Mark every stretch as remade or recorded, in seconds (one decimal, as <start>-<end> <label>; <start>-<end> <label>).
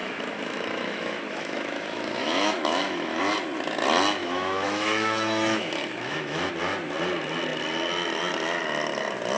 0.0-3.2 remade; 3.2-4.2 recorded; 4.2-6.5 remade; 6.5-9.4 recorded